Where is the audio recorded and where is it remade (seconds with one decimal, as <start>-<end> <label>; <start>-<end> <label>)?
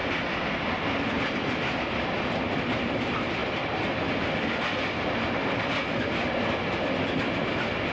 0.0-7.9 recorded